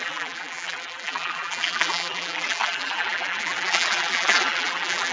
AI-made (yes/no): yes